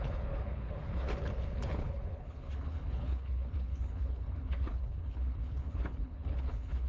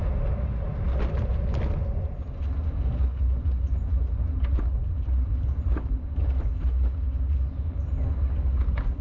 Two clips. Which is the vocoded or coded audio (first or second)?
first